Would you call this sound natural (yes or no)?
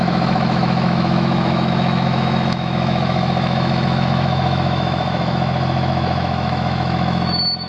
no